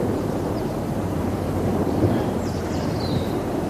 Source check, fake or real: fake